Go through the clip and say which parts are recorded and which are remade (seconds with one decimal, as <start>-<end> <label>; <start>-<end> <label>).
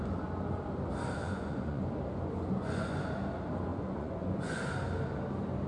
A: 0.0-1.2 recorded; 1.2-1.8 remade; 1.8-2.6 recorded; 2.6-3.1 remade; 3.1-3.7 recorded; 3.7-4.6 remade; 4.6-5.7 recorded